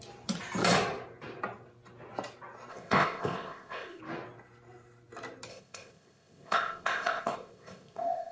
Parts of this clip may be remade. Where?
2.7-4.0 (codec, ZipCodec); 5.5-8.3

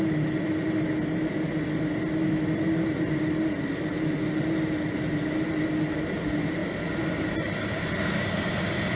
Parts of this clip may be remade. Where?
none

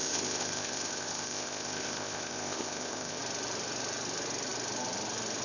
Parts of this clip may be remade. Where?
0.0-3.2 (codec, ZipCodec)

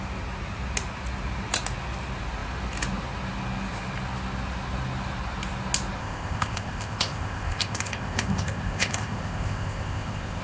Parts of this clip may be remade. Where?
6.0-10.4 (codec, ZipCodec)